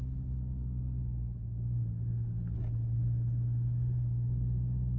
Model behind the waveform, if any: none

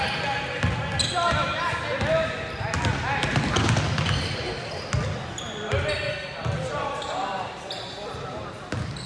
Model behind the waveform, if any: none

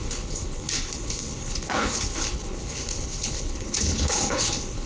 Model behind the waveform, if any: codec, HILCodec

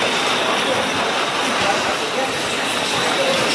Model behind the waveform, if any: none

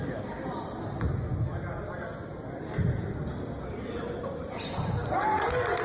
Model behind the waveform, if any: none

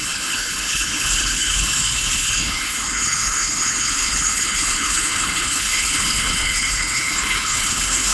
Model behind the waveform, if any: codec, HILCodec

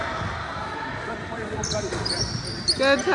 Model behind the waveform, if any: none